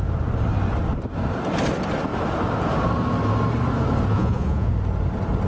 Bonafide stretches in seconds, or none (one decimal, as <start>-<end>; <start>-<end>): 0.0-4.1; 4.7-5.5